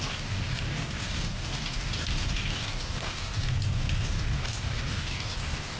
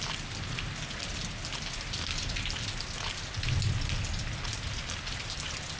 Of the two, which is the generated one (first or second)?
first